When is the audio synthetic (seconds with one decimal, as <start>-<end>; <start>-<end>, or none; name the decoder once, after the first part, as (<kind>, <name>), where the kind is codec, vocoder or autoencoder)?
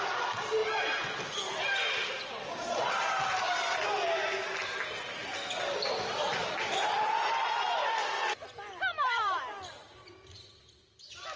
8.9-9.4 (vocoder, BigVGAN v2)